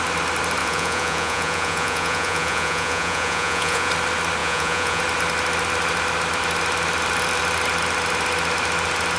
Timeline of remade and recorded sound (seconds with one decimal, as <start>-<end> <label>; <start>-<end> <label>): 0.0-0.6 recorded; 0.6-3.9 remade; 3.9-4.4 recorded; 4.4-5.0 remade; 5.0-9.2 recorded